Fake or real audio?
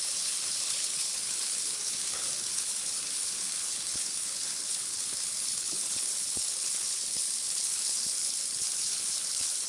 fake